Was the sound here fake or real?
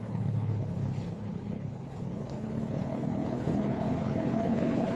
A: fake